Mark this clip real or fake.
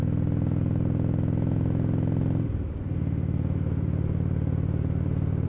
real